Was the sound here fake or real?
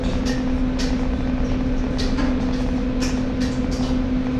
real